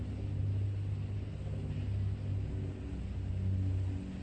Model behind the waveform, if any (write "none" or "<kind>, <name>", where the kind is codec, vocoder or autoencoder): none